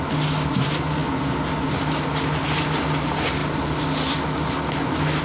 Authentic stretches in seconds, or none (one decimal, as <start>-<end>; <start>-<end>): 0.0-5.2